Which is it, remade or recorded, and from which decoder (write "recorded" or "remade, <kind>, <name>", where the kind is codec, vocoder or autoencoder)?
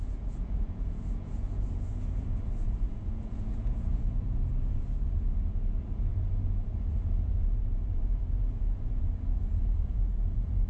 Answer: remade, vocoder, Vocos